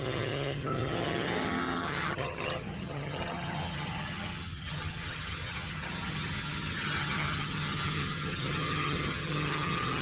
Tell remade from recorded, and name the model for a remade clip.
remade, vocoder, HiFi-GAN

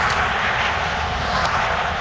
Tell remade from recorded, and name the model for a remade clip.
recorded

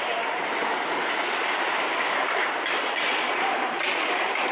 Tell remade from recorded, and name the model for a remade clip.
recorded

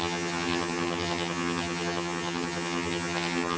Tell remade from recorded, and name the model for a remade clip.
remade, vocoder, HiFi-GAN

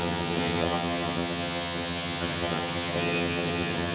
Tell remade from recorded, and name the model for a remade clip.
remade, vocoder, HiFi-GAN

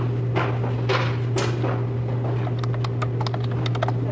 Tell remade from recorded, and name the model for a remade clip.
recorded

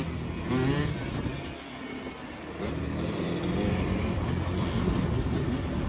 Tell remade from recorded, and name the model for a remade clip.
recorded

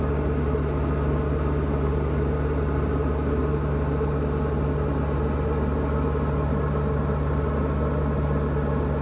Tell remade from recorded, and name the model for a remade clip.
recorded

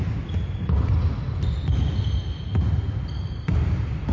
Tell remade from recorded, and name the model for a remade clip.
recorded